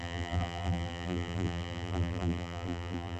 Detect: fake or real fake